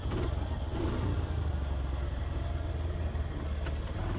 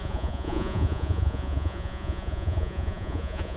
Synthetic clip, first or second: second